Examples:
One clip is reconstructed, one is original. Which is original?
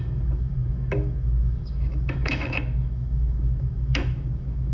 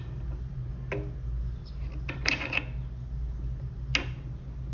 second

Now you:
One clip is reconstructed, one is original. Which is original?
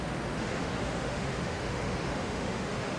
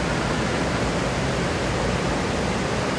second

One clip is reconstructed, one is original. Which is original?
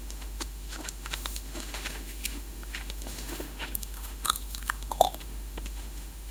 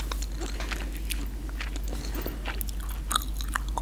second